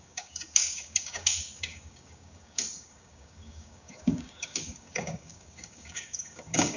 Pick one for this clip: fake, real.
fake